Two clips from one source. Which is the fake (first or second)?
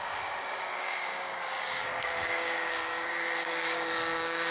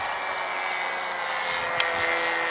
first